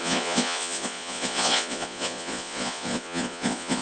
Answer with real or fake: fake